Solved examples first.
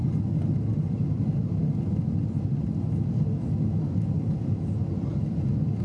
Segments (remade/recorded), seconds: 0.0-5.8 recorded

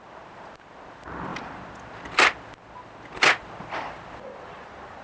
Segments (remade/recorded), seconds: 0.0-5.0 recorded

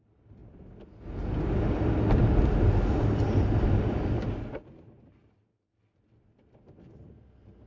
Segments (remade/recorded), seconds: 0.0-7.7 recorded